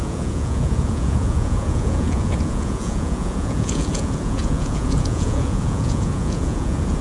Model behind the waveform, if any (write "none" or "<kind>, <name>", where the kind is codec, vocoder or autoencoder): vocoder, Vocos